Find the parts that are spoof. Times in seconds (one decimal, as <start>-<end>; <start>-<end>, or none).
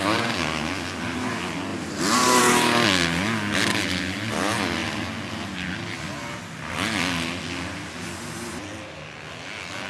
none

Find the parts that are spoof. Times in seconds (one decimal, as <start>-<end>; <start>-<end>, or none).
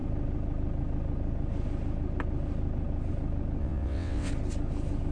3.6-4.3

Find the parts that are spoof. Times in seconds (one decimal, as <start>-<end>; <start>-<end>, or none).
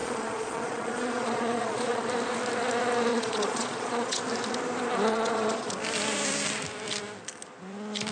0.0-2.1; 3.1-4.2; 5.1-5.7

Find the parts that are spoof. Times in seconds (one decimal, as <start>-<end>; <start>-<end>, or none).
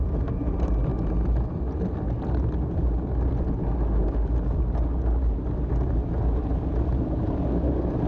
none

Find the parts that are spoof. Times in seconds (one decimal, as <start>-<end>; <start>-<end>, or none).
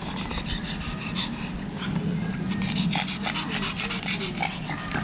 none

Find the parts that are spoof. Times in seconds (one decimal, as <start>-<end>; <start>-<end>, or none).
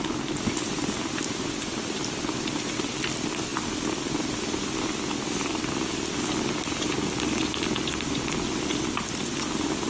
none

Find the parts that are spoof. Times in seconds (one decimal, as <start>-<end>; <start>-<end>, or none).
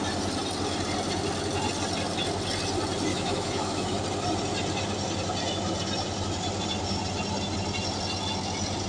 3.1-4.0